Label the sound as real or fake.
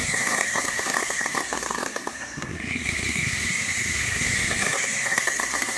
fake